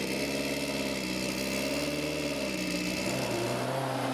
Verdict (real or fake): real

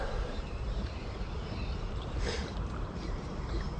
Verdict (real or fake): fake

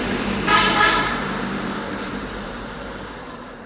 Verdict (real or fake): fake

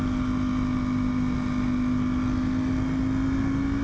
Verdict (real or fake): real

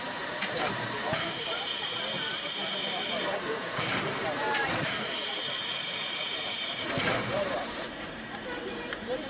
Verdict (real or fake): fake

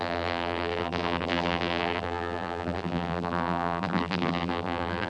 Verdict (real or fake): fake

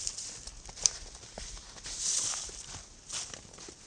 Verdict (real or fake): real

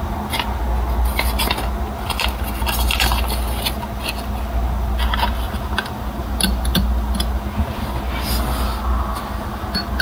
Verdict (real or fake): real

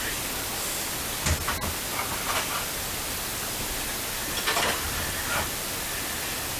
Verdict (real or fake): real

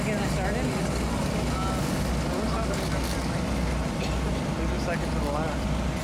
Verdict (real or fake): real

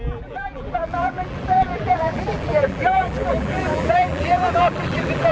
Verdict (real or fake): fake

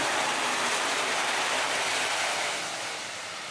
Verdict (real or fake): fake